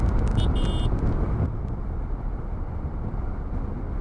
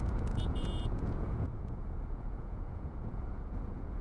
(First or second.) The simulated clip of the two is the second